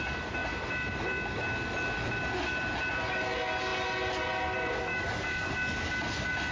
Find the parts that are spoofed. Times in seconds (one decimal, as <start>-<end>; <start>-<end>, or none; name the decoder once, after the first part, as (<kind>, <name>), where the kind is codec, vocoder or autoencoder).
4.9-5.5 (codec, DAC)

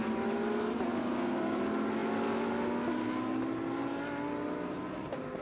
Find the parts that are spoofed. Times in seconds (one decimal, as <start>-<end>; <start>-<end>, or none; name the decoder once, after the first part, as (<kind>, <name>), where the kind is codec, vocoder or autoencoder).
1.0-1.6 (codec, DAC)